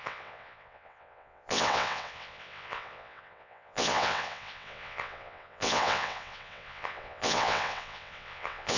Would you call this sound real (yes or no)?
no